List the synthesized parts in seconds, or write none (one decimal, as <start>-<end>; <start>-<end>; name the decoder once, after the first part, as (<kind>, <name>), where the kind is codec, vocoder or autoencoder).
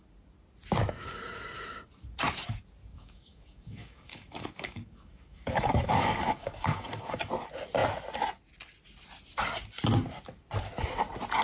2.9-7.3 (codec, DAC)